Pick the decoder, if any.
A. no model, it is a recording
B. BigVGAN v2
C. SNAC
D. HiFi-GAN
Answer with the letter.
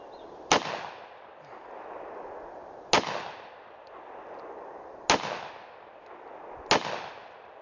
A